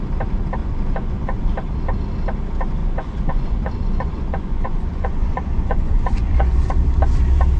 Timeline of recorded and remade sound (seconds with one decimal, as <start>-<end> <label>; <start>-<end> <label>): 0.0-0.6 recorded; 0.6-1.5 remade; 1.5-2.8 recorded; 2.8-6.7 remade; 6.7-7.6 recorded